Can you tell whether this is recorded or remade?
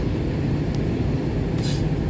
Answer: recorded